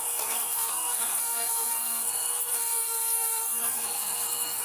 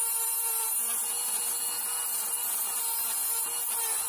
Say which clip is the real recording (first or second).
second